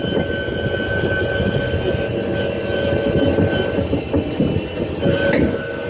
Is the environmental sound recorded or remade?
recorded